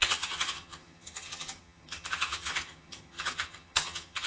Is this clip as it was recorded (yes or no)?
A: no